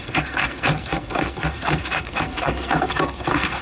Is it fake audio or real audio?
fake